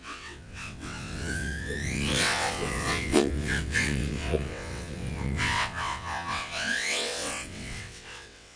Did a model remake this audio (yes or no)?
yes